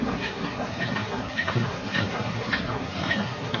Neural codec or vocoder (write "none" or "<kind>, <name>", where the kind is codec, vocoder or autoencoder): codec, SNAC